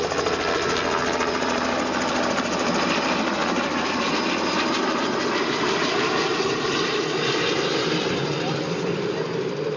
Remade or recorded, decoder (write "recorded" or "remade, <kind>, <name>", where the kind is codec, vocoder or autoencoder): remade, vocoder, BigVGAN v2